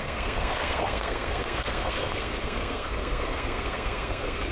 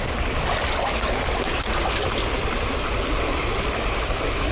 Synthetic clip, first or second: first